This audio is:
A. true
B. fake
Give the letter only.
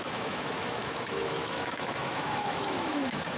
B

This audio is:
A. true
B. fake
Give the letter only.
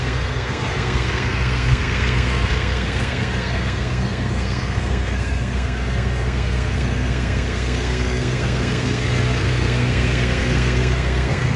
B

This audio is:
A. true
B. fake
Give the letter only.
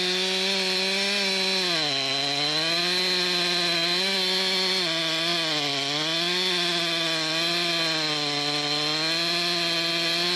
A